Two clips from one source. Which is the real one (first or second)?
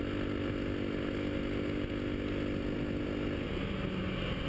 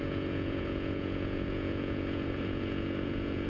first